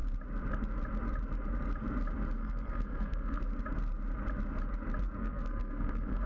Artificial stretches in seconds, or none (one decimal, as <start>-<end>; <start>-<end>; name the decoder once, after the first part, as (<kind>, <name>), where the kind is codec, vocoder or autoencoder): 2.4-3.4 (codec, SNAC); 5.2-6.3